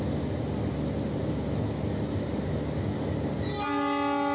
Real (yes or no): yes